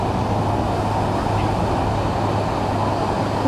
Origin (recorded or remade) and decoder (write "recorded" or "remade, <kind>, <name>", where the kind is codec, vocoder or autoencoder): recorded